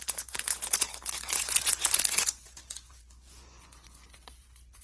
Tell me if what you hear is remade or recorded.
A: remade